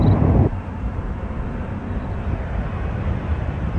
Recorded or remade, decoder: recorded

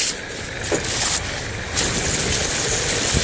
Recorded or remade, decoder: recorded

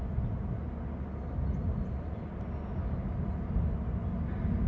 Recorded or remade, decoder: recorded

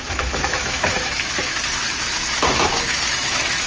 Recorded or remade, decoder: remade, autoencoder, DAC-VAE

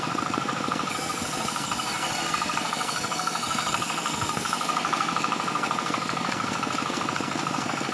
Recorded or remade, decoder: remade, codec, SNAC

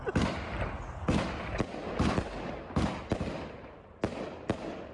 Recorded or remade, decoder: recorded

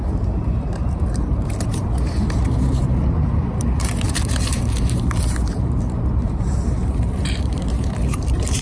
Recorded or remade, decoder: remade, vocoder, BigVGAN v2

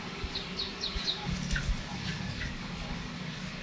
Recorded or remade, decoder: remade, codec, DAC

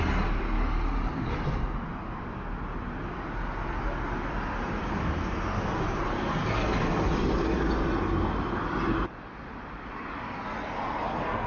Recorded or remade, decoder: recorded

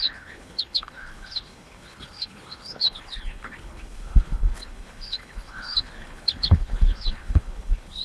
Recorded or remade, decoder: remade, codec, HILCodec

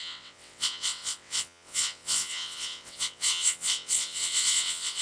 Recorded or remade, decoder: remade, vocoder, WaveNeXt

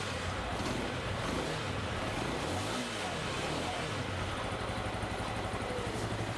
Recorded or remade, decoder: remade, vocoder, BigVGAN v2